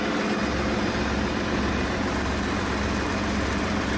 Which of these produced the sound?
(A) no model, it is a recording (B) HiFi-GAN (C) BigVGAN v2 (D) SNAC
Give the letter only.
A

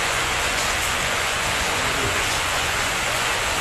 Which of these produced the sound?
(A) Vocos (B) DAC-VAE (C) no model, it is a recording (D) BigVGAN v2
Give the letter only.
A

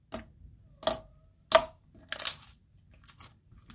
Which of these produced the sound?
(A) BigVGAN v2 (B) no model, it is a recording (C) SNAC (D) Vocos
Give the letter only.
B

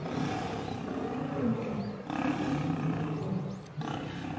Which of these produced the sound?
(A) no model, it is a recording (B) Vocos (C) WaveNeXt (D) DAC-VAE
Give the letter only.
A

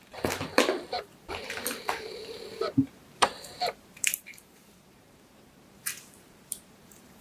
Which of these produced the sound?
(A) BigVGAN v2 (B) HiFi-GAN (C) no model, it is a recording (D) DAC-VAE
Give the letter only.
A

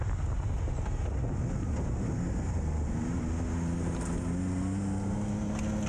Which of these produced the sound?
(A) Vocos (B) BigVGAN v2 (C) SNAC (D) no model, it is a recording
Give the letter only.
D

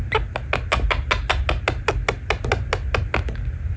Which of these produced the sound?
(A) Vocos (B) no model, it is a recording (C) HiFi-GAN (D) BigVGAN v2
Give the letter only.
B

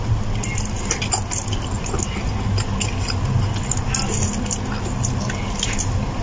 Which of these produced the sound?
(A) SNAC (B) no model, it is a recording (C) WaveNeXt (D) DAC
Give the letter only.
B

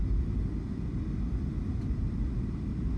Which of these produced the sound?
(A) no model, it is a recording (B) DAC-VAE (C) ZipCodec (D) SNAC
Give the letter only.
A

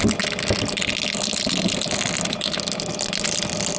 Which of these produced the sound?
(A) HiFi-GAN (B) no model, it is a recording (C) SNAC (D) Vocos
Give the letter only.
B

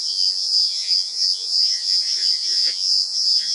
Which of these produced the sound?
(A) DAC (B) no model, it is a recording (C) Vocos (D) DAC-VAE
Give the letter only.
C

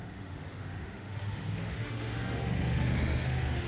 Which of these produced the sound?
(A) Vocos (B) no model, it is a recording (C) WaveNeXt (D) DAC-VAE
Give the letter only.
D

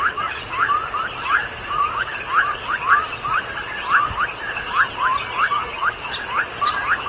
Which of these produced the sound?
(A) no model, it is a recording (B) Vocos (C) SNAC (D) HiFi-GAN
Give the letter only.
A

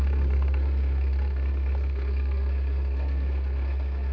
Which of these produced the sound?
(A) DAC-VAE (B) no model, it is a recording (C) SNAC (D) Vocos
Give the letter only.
C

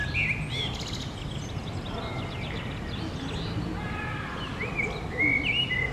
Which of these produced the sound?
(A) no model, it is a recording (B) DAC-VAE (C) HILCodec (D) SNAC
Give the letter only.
A